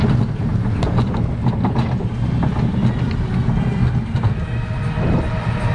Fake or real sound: real